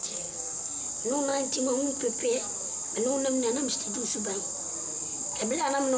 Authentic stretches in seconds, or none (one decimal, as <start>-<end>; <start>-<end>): 0.8-6.0